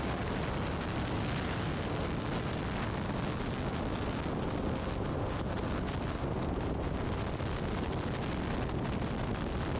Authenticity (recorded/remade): recorded